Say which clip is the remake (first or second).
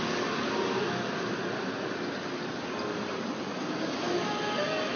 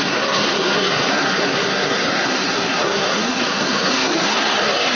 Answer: second